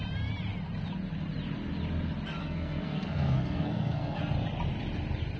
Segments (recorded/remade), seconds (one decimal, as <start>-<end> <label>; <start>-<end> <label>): 0.0-2.4 recorded; 2.4-4.2 remade; 4.2-5.4 recorded